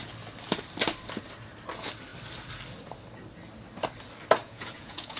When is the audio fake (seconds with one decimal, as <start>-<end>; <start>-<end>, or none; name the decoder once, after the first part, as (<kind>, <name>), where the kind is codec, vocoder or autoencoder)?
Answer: 4.4-5.2 (vocoder, Vocos)